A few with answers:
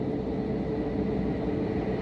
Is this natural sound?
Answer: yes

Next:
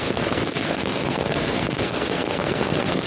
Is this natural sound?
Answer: no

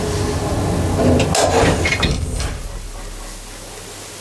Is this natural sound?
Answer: yes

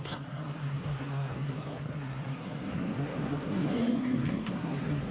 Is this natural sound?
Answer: no